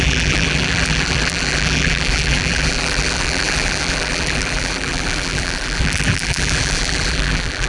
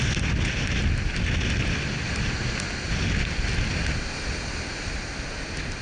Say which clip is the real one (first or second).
second